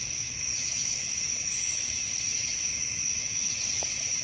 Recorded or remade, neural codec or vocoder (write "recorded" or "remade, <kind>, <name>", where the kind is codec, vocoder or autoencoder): remade, autoencoder, DAC-VAE